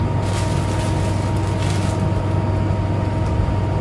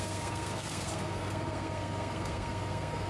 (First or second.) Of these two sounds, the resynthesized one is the second